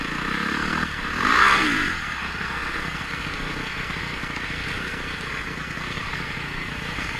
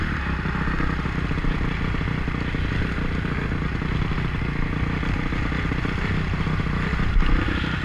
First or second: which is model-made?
first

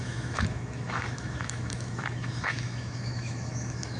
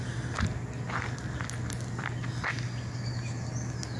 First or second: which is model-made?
first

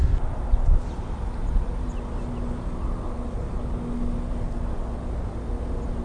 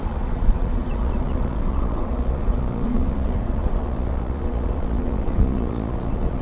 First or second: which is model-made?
second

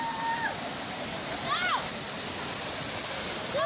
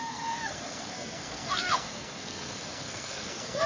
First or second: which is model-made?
second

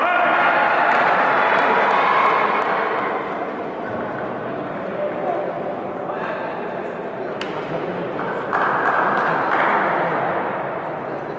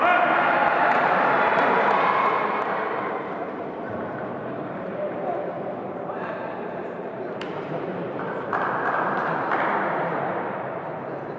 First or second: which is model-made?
second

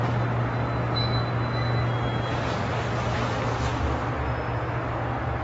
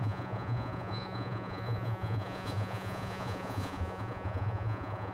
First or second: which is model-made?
second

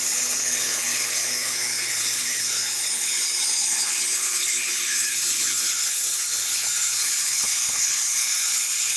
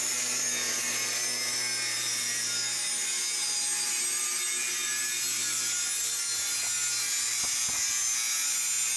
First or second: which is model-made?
first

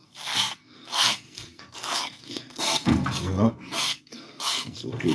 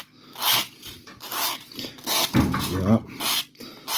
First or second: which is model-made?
first